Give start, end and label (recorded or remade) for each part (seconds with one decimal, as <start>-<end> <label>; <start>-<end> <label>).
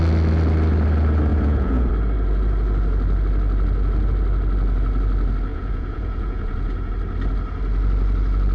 0.0-1.3 recorded; 1.3-1.9 remade; 1.9-5.5 recorded; 5.5-6.9 remade; 6.9-8.5 recorded